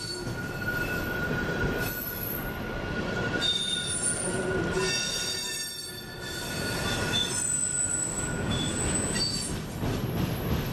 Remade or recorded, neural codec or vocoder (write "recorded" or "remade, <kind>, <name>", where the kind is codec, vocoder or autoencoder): recorded